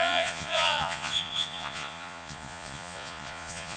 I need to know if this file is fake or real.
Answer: fake